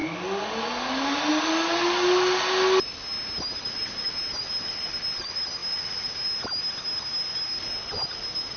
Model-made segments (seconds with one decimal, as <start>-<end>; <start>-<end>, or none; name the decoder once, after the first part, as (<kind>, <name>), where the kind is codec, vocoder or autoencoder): none